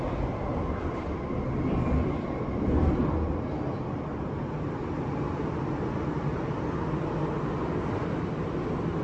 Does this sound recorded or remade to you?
recorded